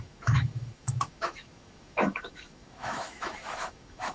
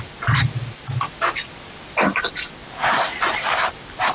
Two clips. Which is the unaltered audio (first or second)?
second